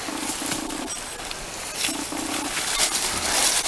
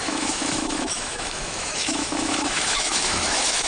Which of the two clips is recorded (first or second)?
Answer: first